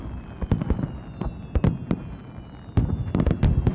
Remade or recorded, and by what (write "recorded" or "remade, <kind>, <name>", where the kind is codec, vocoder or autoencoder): recorded